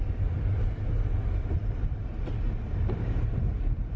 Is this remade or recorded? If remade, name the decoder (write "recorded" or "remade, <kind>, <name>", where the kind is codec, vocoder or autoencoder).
remade, vocoder, BigVGAN v2